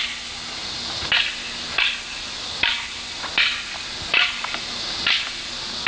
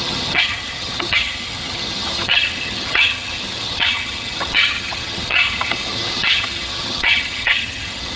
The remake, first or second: second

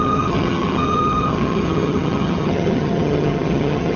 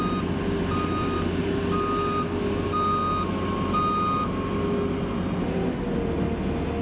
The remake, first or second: first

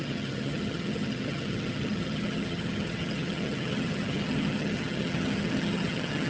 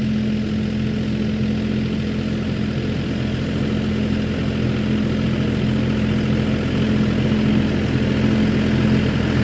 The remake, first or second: first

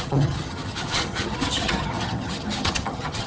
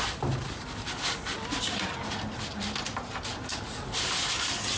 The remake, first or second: first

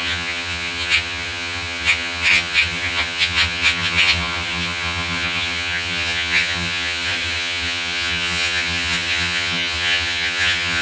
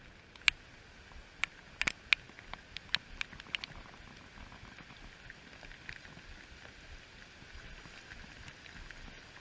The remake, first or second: first